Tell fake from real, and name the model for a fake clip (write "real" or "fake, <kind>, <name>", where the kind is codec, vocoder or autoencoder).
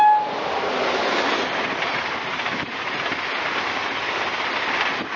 real